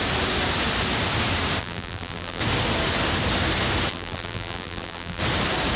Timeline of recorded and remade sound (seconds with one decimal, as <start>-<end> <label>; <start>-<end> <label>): 0.0-1.6 recorded; 1.6-2.4 remade; 2.4-3.9 recorded; 3.9-5.2 remade; 5.2-5.8 recorded